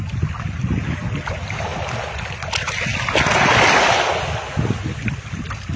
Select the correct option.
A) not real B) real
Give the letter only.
B